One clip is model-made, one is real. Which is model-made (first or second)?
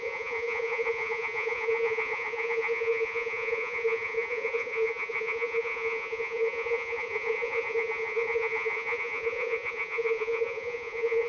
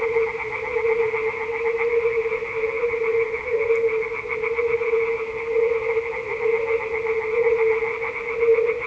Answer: first